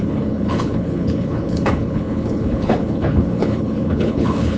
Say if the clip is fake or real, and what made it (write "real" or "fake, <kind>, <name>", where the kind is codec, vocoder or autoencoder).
fake, codec, HILCodec